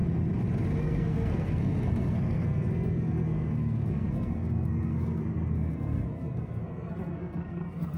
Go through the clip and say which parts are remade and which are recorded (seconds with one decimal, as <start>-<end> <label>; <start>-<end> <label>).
0.0-0.8 recorded; 0.8-8.0 remade